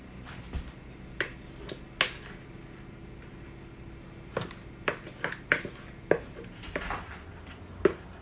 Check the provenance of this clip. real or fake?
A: real